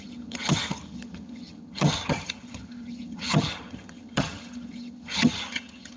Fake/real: fake